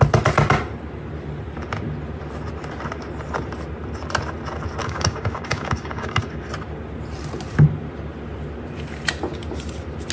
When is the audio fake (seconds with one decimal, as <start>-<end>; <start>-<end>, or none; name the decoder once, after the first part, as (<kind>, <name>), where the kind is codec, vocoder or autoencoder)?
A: 4.8-6.4 (codec, DAC)